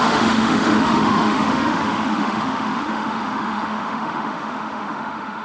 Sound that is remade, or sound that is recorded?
remade